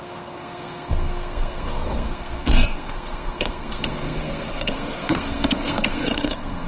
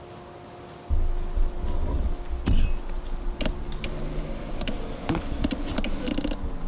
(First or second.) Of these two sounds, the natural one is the second